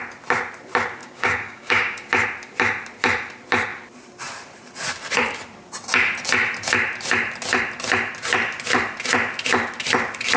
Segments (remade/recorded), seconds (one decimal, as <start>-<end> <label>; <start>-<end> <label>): 0.0-1.0 recorded; 1.0-2.1 remade; 2.1-10.4 recorded